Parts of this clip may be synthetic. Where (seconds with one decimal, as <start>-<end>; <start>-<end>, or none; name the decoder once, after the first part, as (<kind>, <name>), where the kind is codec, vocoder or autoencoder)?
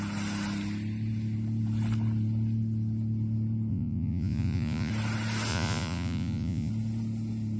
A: 3.7-4.9 (vocoder, Vocos); 5.5-6.7